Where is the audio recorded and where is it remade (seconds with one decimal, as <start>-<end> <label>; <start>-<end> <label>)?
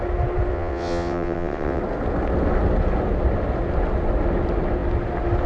0.0-0.5 recorded; 0.5-1.8 remade; 1.8-5.5 recorded